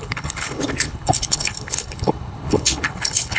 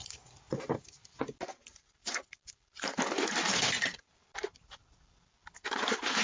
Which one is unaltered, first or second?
second